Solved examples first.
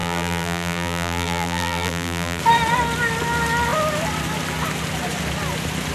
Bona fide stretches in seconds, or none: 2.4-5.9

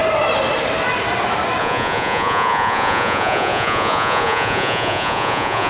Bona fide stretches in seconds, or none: 0.0-1.6

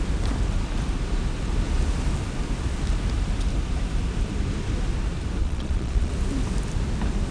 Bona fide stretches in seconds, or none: 0.0-5.4; 6.1-7.3